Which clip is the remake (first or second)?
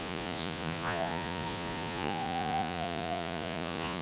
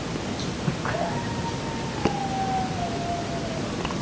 first